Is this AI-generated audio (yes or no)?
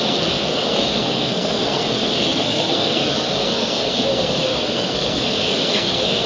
yes